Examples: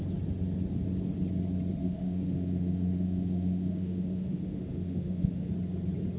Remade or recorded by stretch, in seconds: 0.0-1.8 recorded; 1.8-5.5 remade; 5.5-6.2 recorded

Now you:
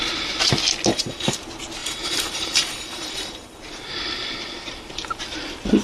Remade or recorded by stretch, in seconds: 0.0-0.9 recorded; 0.9-1.4 remade; 1.4-1.8 recorded; 1.8-3.6 remade; 3.6-5.8 recorded

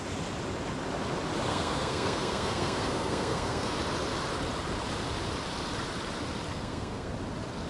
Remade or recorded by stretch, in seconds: 0.0-1.5 recorded; 1.5-3.7 remade; 3.7-6.5 recorded; 6.5-7.1 remade; 7.1-7.7 recorded

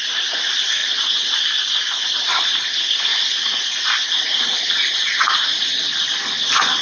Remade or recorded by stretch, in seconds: 0.0-3.1 recorded; 3.1-5.7 remade; 5.7-6.8 recorded

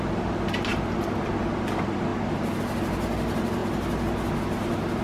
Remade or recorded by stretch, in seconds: 0.0-5.0 recorded

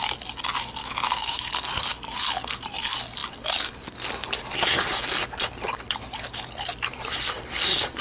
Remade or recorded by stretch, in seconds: 0.0-0.8 recorded; 0.8-1.5 remade; 1.5-8.0 recorded